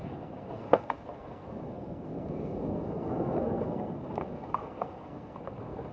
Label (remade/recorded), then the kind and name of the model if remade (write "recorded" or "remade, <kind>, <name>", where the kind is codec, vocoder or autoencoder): remade, codec, SNAC